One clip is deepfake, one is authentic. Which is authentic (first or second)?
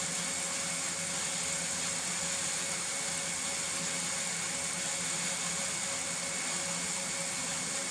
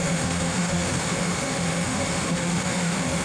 first